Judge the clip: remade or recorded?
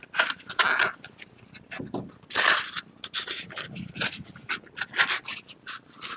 recorded